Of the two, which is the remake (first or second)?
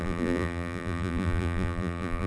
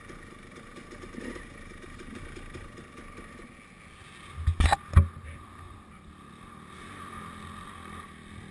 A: first